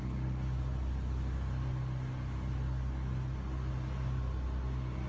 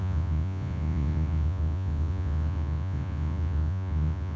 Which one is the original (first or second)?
first